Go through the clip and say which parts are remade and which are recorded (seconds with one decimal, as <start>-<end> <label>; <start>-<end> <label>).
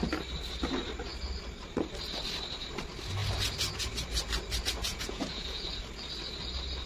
0.0-4.9 recorded; 4.9-5.7 remade; 5.7-6.9 recorded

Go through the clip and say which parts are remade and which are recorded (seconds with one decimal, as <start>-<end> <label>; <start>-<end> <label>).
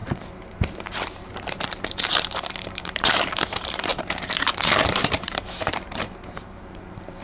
0.0-7.2 remade